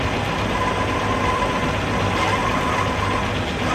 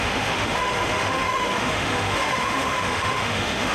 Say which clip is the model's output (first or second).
second